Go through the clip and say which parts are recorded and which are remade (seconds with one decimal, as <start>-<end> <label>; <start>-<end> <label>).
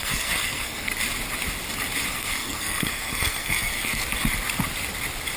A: 0.0-0.9 remade; 0.9-2.1 recorded; 2.1-4.0 remade; 4.0-5.4 recorded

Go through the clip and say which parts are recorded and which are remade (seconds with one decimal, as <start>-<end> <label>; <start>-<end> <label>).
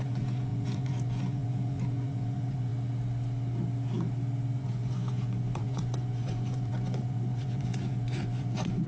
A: 0.0-2.7 remade; 2.7-4.6 recorded; 4.6-8.9 remade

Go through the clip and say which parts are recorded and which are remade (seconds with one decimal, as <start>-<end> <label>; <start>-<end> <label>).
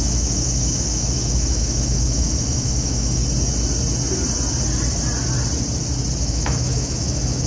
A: 0.0-3.2 remade; 3.2-6.2 recorded; 6.2-7.5 remade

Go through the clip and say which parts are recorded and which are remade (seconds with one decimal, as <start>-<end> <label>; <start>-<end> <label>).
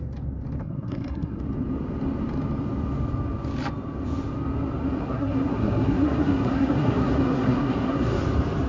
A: 0.0-0.6 recorded; 0.6-1.4 remade; 1.4-5.0 recorded; 5.0-8.2 remade; 8.2-8.7 recorded